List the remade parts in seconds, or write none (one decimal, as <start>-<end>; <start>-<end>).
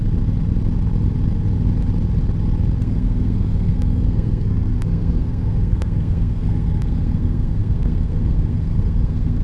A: 2.8-9.4